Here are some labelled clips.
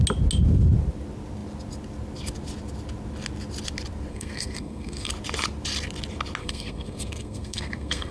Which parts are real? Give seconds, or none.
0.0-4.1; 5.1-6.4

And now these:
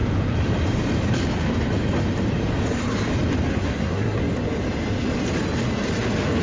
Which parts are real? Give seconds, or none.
0.0-3.5; 4.2-6.4